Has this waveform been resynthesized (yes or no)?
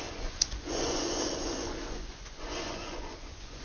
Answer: yes